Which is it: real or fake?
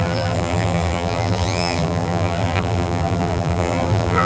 fake